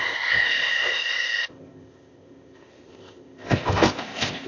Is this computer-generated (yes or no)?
yes